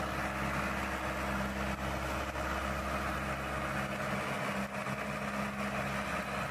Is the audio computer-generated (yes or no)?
no